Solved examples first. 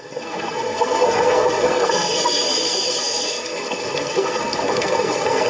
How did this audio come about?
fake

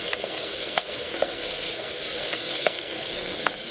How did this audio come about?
fake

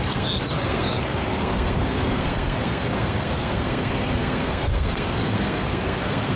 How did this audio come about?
fake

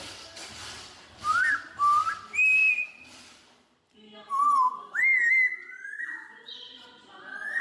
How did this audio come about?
real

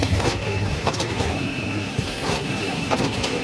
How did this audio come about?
fake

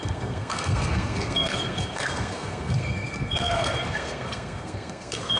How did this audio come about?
fake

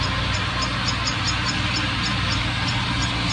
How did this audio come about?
real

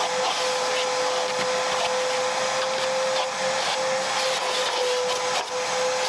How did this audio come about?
real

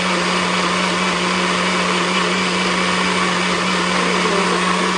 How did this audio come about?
real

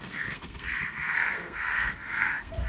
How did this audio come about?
fake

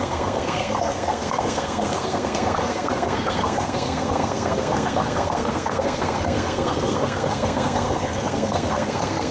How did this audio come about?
fake